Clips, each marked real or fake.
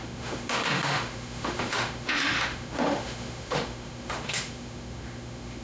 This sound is fake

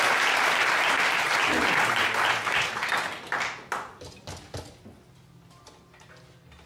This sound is real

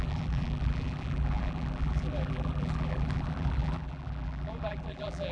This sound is fake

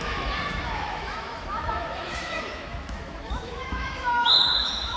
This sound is fake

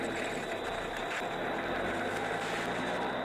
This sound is real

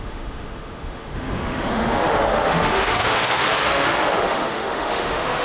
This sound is fake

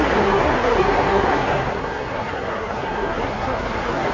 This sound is fake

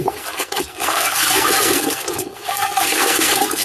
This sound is fake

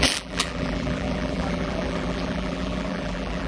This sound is fake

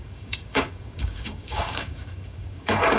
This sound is fake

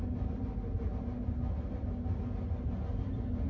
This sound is real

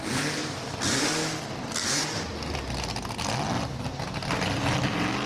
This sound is real